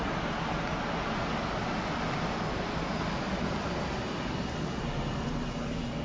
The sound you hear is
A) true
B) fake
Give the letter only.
A